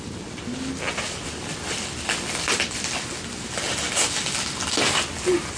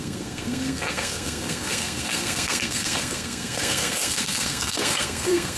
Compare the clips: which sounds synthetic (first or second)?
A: second